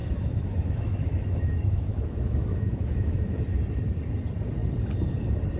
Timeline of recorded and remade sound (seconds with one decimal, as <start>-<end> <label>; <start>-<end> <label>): 0.0-3.4 remade; 3.4-5.6 recorded

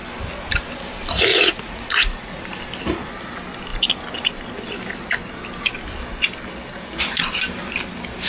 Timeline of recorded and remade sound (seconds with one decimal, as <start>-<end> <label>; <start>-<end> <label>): 0.0-1.3 recorded; 1.3-2.4 remade; 2.4-8.3 recorded

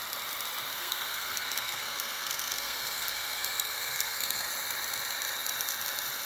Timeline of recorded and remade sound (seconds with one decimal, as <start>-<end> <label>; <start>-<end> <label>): 0.0-0.7 recorded; 0.7-4.5 remade; 4.5-6.3 recorded

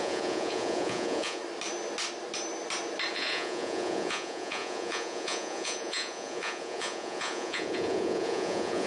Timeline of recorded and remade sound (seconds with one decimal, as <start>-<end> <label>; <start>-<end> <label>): 0.0-1.4 remade; 1.4-3.1 recorded; 3.1-8.9 remade

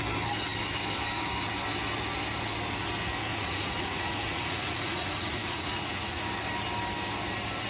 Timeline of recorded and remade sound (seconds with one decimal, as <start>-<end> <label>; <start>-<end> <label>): 0.0-3.3 recorded; 3.3-6.3 remade; 6.3-7.7 recorded